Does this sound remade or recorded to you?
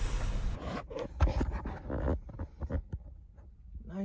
recorded